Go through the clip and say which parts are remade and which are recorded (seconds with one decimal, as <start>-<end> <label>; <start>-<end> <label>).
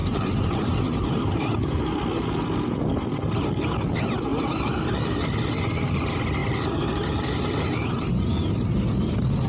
0.0-1.5 remade; 1.5-4.3 recorded; 4.3-4.9 remade; 4.9-6.4 recorded; 6.4-8.8 remade; 8.8-9.5 recorded